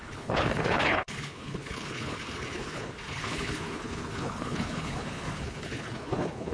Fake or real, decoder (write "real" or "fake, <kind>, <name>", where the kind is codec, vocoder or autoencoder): fake, codec, HILCodec